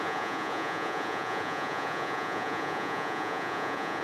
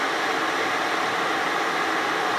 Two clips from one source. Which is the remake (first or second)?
first